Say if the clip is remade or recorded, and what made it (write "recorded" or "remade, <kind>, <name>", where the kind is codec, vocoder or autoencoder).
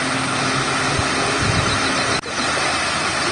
recorded